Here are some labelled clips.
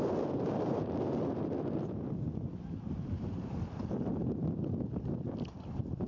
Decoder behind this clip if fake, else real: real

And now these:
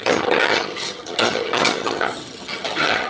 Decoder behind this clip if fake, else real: fake, vocoder, HiFi-GAN